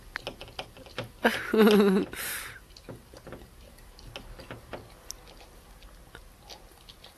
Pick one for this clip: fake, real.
real